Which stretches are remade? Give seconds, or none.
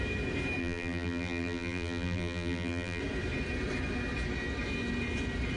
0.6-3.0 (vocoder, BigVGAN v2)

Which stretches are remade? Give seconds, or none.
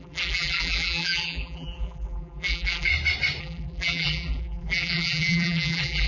0.0-2.9 (vocoder, BigVGAN v2); 3.4-6.1